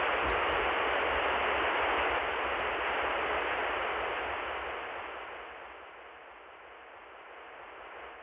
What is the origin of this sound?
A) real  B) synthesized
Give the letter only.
A